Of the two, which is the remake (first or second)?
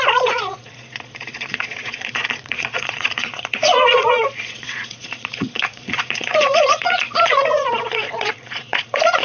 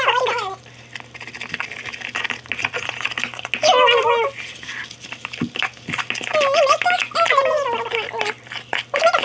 first